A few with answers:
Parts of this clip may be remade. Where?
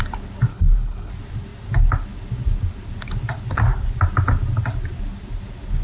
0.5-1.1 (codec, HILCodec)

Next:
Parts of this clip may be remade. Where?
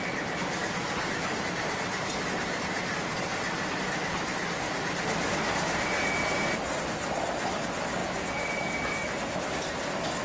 none